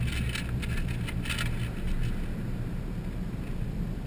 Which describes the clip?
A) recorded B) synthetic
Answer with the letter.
A